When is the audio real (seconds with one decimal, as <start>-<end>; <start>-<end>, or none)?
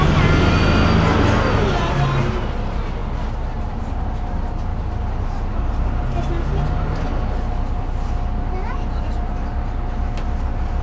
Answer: 0.0-10.8